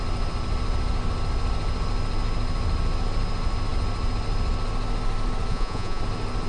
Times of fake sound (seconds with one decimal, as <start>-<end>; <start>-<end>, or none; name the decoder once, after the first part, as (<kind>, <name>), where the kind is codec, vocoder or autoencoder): 5.5-6.0 (vocoder, Vocos)